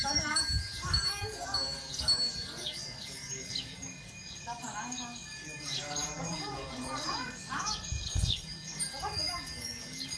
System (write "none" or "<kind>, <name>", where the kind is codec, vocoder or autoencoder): codec, DAC